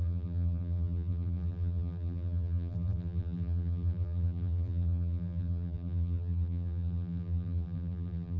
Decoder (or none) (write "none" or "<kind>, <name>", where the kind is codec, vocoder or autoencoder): vocoder, BigVGAN v2